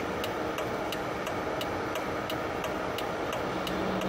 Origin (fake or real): real